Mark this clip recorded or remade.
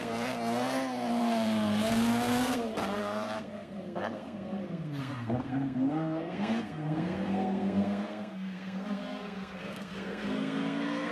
remade